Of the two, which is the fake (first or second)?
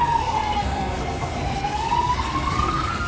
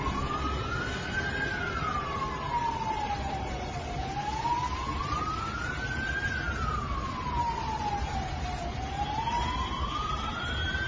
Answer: first